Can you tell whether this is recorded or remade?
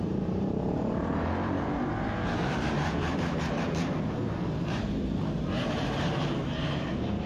remade